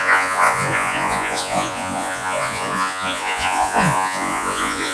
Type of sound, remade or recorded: remade